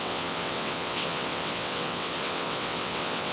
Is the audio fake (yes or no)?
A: yes